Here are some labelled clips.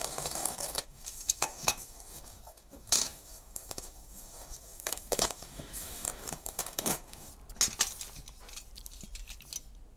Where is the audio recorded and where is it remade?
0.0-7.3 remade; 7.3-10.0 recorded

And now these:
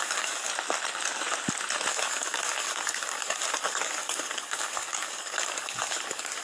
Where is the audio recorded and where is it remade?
0.0-0.5 remade; 0.5-1.9 recorded; 1.9-6.4 remade